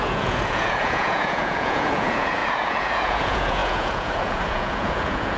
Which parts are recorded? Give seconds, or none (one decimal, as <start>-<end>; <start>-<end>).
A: none